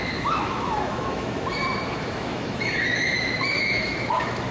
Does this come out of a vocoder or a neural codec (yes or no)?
yes